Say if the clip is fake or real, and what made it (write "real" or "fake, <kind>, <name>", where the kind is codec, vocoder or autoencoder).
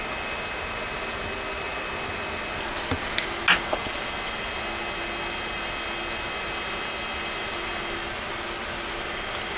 real